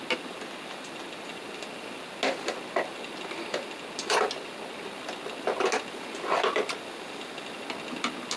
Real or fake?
real